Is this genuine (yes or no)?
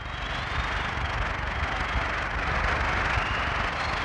yes